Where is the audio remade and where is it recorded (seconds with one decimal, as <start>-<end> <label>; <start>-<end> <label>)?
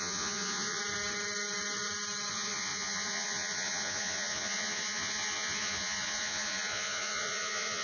0.0-0.8 remade; 0.8-2.3 recorded; 2.3-7.8 remade